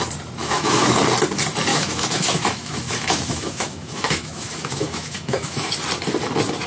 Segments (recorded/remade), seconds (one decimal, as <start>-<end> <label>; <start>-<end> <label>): 0.0-0.4 recorded; 0.4-0.9 remade; 0.9-1.7 recorded; 1.7-5.7 remade; 5.7-6.7 recorded

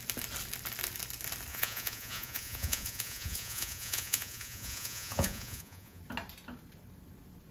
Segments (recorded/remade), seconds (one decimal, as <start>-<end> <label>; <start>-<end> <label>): 0.0-1.5 recorded; 1.5-6.0 remade; 6.0-7.5 recorded

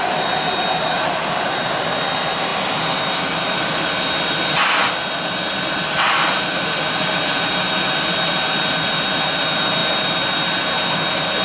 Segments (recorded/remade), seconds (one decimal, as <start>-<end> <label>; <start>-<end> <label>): 0.0-11.4 recorded

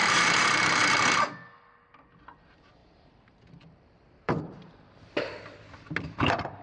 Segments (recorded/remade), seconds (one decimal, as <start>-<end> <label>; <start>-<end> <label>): 0.0-1.2 remade; 1.2-2.8 recorded; 2.8-4.7 remade; 4.7-6.6 recorded

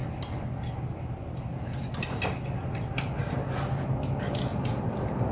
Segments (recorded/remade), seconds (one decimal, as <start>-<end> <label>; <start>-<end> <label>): 0.0-5.3 recorded